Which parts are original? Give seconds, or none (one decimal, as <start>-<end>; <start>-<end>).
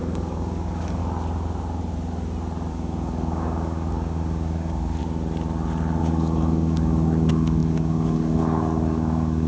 1.0-2.7; 5.0-6.0